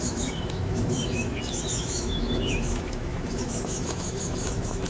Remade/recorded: remade